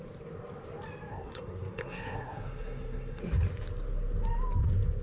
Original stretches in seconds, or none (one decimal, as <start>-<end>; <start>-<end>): 0.0-1.1; 3.2-5.0